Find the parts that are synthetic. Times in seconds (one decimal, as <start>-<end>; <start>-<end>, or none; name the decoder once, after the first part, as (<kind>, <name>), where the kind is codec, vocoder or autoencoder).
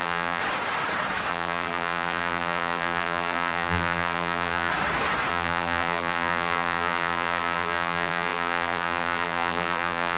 0.0-0.4 (vocoder, BigVGAN v2); 1.3-4.7; 5.3-10.2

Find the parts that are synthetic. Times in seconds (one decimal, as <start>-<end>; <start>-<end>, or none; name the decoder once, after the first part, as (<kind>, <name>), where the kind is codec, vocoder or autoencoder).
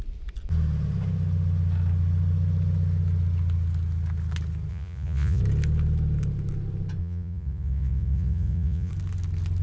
4.7-5.4 (vocoder, Vocos); 7.0-8.9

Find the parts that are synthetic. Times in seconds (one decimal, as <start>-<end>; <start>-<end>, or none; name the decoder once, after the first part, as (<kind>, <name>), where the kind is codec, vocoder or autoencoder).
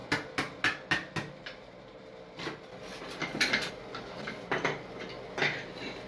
none